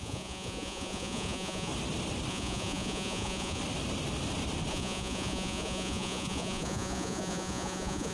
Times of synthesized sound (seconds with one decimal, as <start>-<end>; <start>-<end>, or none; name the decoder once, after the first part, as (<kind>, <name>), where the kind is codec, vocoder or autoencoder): 0.0-1.7 (vocoder, Vocos); 2.3-3.6; 4.7-8.1